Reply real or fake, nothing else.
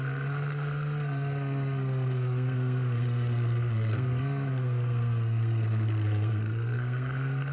fake